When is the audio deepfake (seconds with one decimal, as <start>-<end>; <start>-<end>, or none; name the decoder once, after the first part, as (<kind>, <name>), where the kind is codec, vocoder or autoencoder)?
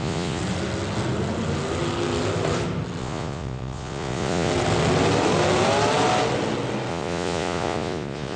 0.0-0.4 (vocoder, Vocos); 3.0-4.5; 6.9-8.4